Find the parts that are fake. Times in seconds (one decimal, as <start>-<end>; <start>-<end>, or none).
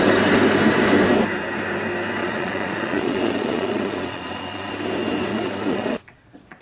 2.2-4.7; 5.3-6.6